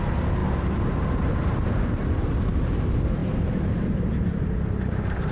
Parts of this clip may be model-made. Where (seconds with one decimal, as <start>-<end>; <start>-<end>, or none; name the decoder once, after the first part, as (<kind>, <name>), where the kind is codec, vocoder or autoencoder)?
0.0-5.3 (vocoder, BigVGAN v2)